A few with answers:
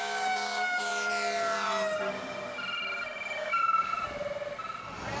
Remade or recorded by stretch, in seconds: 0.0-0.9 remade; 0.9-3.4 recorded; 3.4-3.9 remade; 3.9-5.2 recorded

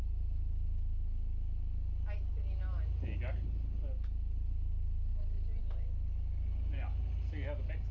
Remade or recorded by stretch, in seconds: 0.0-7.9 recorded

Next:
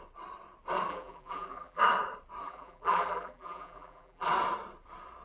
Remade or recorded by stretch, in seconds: 0.0-0.9 recorded; 0.9-1.8 remade; 1.8-2.4 recorded; 2.4-4.3 remade; 4.3-5.2 recorded